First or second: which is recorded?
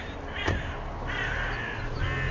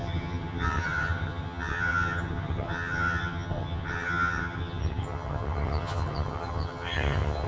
first